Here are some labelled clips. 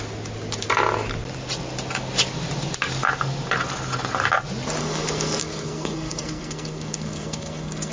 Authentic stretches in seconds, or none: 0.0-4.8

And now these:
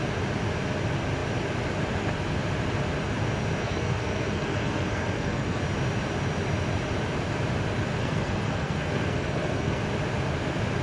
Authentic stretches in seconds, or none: 0.0-3.6; 5.6-8.0; 9.8-10.8

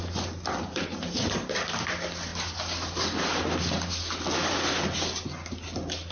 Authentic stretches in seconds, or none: 0.0-6.1

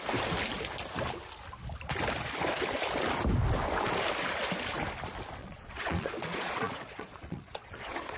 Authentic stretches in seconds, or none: 0.0-5.4

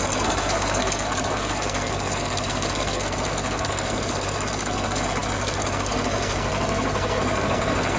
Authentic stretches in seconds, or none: none